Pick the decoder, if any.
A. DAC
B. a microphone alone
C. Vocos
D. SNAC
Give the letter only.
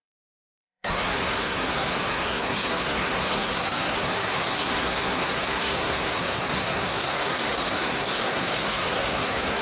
D